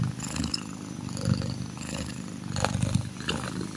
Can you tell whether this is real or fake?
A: real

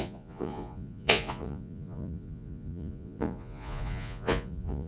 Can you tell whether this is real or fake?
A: fake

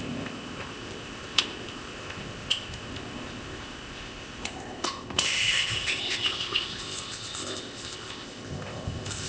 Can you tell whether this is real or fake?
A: fake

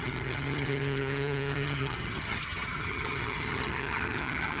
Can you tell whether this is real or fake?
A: fake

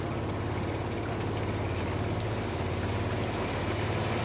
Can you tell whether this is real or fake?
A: real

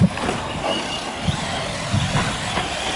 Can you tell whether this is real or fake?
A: real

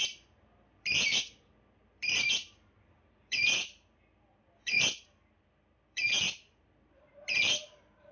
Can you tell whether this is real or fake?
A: fake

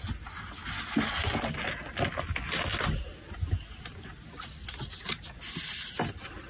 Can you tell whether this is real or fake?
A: real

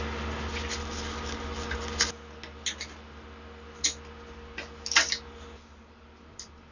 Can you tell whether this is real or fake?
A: real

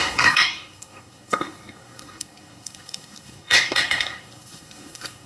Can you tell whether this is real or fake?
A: fake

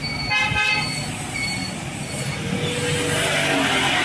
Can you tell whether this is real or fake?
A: real